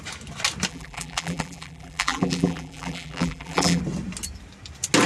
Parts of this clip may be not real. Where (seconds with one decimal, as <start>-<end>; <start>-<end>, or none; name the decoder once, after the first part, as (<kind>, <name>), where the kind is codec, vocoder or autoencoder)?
0.7-3.8 (vocoder, BigVGAN v2)